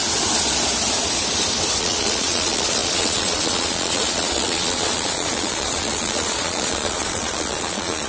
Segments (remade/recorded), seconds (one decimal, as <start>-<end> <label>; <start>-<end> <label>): 0.0-1.8 recorded; 1.8-8.1 remade